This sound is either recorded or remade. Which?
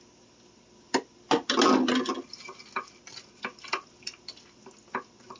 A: recorded